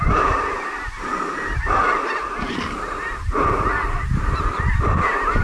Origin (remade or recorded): recorded